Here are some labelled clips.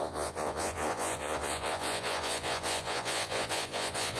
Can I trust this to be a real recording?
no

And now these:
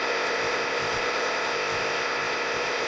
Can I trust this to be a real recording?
no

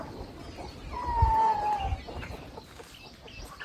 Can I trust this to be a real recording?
yes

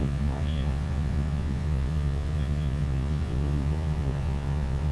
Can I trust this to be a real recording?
no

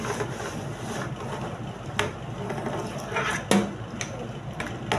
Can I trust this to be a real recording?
yes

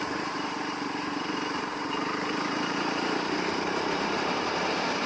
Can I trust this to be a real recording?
no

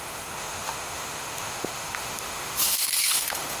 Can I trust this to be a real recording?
no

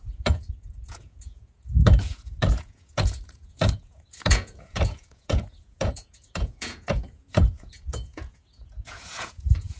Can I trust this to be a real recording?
no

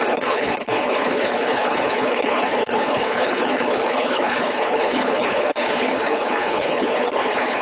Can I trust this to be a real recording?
no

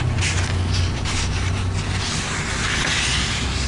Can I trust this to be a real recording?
yes